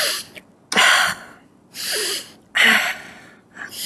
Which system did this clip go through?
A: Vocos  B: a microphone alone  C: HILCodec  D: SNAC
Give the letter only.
B